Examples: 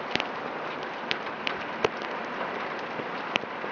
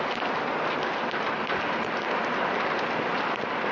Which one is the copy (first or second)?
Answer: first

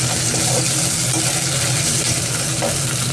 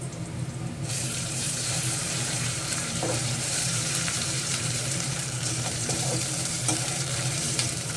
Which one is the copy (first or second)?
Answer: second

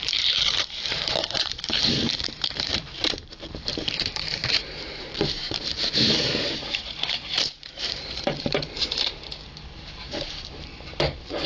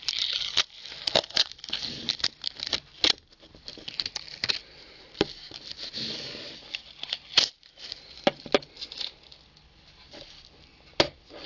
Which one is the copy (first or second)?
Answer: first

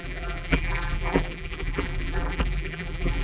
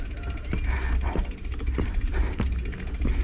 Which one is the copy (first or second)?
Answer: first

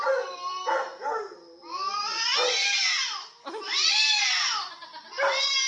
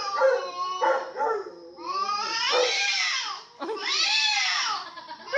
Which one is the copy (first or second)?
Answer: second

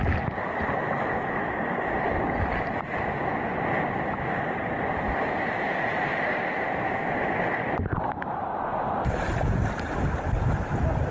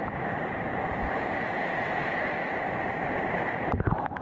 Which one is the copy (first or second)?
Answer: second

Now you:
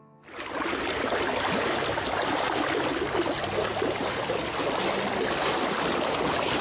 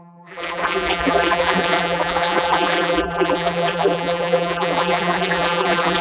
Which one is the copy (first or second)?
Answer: second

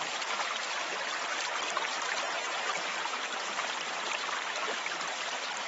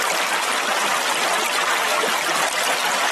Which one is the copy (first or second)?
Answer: first